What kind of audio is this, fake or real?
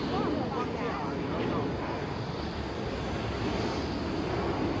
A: real